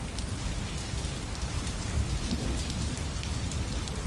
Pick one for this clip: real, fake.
real